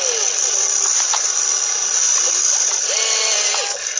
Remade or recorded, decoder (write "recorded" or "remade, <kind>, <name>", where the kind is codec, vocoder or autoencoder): recorded